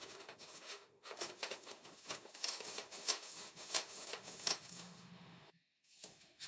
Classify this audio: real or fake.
fake